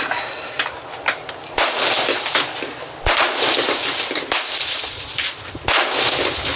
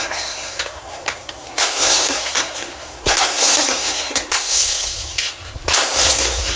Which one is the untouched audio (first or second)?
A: first